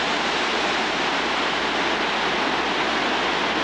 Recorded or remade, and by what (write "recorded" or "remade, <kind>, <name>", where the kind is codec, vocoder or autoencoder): recorded